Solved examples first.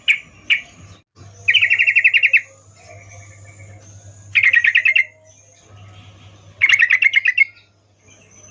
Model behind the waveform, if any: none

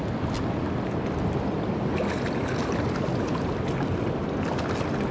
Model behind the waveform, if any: none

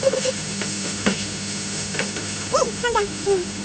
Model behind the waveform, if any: autoencoder, DAC-VAE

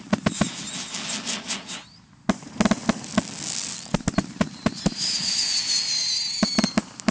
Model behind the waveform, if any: none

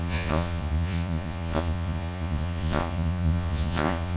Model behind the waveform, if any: vocoder, Vocos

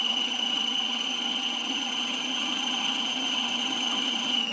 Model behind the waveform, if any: vocoder, HiFi-GAN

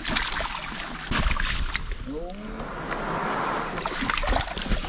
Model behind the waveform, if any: none